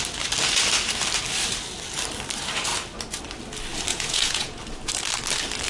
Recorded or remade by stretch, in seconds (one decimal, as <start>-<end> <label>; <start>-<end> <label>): 0.0-3.9 recorded; 3.9-4.6 remade; 4.6-5.7 recorded

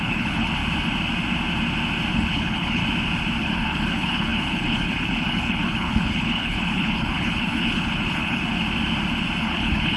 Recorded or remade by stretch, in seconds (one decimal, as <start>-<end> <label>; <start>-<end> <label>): 0.0-0.6 remade; 0.6-2.1 recorded; 2.1-2.8 remade; 2.8-3.4 recorded; 3.4-8.4 remade; 8.4-9.4 recorded; 9.4-10.0 remade

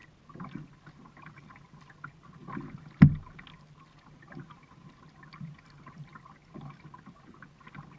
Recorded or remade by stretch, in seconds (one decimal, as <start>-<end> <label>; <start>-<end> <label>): 0.0-8.0 recorded

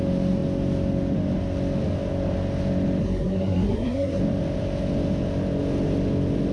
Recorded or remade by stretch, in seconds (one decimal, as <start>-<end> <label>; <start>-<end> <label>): 0.0-3.0 recorded; 3.0-4.2 remade; 4.2-6.5 recorded

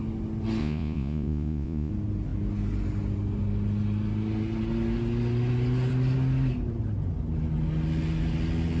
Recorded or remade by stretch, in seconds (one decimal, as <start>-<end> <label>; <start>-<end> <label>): 0.0-0.6 recorded; 0.6-1.9 remade; 1.9-8.8 recorded

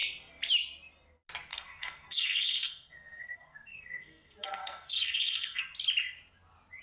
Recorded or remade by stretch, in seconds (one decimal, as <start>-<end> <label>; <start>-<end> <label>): 0.0-1.5 recorded; 1.5-5.6 remade; 5.6-6.8 recorded

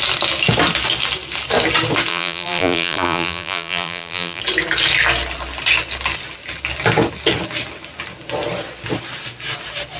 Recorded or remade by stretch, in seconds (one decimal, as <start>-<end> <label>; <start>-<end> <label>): 0.0-2.1 recorded; 2.1-4.4 remade; 4.4-10.0 recorded

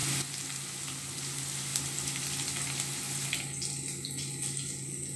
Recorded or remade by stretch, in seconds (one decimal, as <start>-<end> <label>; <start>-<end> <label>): 0.0-5.2 recorded